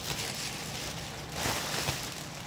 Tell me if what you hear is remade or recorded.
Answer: remade